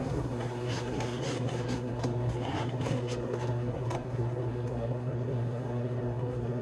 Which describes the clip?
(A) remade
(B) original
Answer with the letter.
A